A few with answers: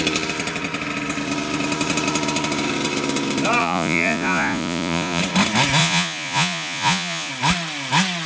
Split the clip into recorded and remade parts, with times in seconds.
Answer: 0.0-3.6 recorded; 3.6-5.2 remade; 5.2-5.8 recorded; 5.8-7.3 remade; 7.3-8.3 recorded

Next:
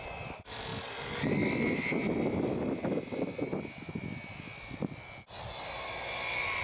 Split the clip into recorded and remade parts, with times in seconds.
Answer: 0.0-6.6 recorded

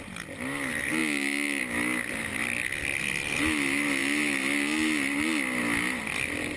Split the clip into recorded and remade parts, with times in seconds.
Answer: 0.0-6.6 recorded

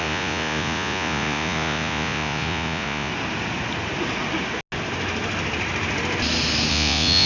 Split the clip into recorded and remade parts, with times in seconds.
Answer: 0.0-3.1 remade; 3.1-6.7 recorded; 6.7-7.3 remade

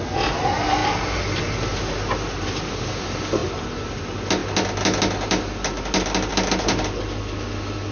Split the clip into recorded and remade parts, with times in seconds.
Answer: 0.0-7.9 recorded

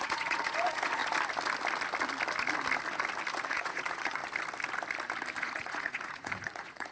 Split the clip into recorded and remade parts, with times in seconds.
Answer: 0.0-1.0 remade; 1.0-3.5 recorded; 3.5-4.2 remade; 4.2-5.4 recorded; 5.4-6.9 remade

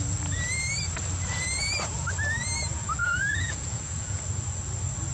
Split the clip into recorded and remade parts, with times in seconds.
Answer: 0.0-3.0 recorded; 3.0-4.2 remade; 4.2-5.1 recorded

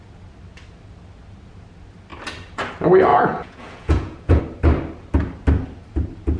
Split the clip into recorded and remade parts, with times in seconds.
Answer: 0.0-3.1 recorded; 3.1-4.4 remade; 4.4-6.4 recorded